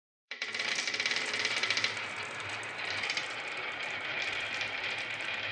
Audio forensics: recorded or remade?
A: remade